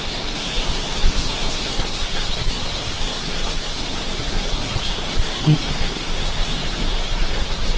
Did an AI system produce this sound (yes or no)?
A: yes